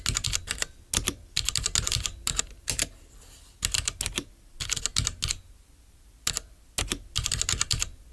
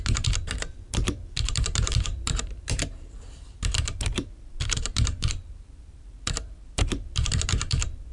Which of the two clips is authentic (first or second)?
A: first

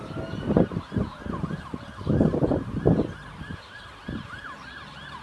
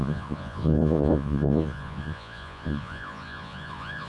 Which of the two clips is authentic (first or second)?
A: first